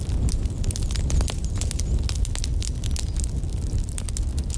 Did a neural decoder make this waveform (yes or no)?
no